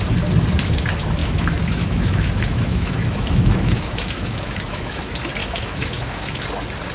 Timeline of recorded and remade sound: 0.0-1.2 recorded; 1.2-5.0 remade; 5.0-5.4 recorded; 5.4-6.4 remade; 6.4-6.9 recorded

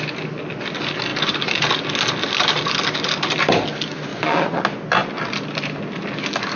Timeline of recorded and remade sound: 0.0-4.1 recorded; 4.1-4.6 remade; 4.6-6.6 recorded

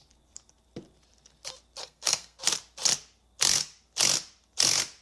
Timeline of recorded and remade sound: 0.0-1.8 recorded; 1.8-2.4 remade; 2.4-5.0 recorded